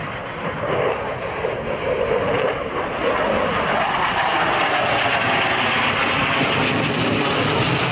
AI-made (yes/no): no